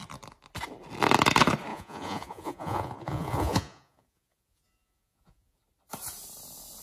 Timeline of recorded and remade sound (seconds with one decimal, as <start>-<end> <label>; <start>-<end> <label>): 0.0-1.7 recorded; 1.7-5.6 remade; 5.6-6.8 recorded